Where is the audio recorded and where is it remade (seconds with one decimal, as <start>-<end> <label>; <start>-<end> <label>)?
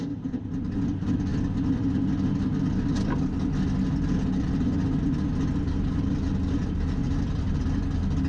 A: 0.0-7.0 recorded; 7.0-7.6 remade; 7.6-8.3 recorded